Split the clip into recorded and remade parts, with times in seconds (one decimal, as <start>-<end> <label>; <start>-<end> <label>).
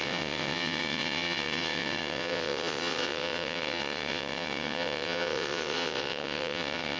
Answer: 0.0-7.0 remade